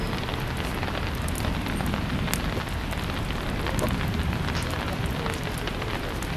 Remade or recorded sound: recorded